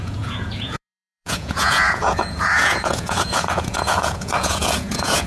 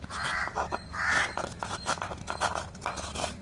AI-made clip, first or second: first